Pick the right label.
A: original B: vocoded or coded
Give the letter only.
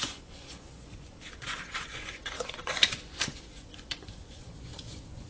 B